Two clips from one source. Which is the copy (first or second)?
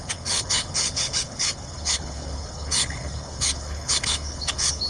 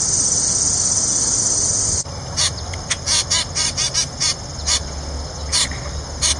first